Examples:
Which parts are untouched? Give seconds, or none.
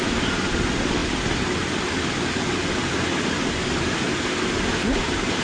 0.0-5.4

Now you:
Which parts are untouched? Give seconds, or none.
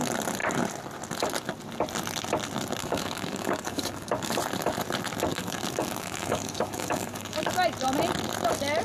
0.0-2.8; 4.4-5.3; 7.5-8.8